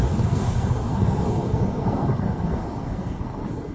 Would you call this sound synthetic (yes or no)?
yes